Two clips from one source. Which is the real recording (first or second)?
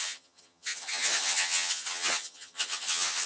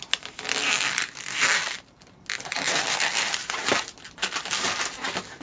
second